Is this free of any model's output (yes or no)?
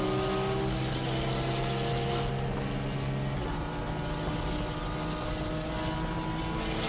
yes